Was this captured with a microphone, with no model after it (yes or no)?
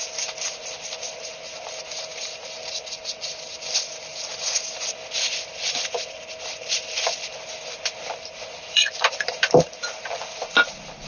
no